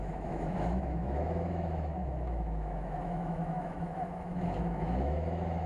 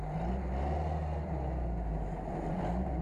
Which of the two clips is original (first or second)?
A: second